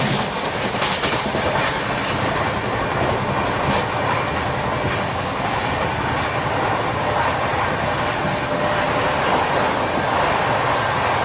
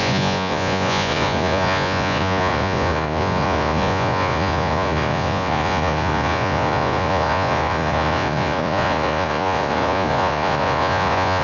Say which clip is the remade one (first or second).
second